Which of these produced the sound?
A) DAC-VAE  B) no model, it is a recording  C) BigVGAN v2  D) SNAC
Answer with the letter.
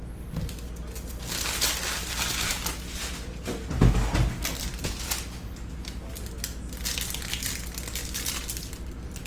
B